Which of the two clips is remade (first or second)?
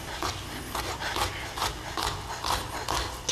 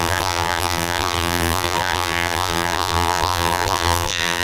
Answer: second